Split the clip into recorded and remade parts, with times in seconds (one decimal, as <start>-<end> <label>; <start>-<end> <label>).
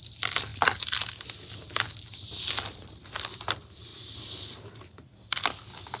0.0-0.5 remade; 0.5-2.7 recorded; 2.7-6.0 remade